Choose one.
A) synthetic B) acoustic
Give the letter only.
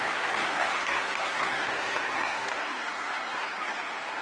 A